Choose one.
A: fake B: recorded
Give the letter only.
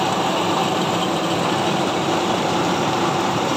A